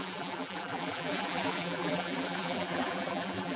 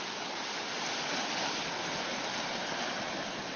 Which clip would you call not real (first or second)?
first